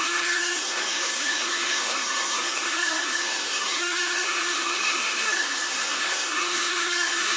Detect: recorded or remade remade